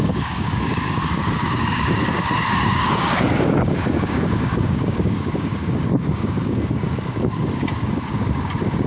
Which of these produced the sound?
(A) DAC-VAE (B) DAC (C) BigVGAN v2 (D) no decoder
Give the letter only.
B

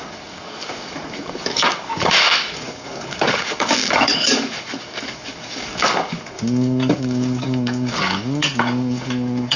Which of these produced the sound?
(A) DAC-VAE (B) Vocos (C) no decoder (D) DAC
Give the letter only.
D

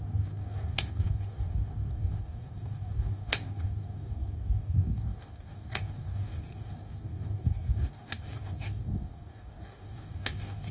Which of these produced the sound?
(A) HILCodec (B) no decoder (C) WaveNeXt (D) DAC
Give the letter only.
D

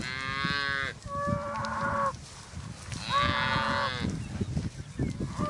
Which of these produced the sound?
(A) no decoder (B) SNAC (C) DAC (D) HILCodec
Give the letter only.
A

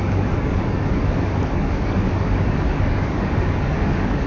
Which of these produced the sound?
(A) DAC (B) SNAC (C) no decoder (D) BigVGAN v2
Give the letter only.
A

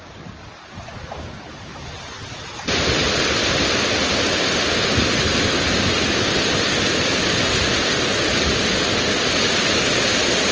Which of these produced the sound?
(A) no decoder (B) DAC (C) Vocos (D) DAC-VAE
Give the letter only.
A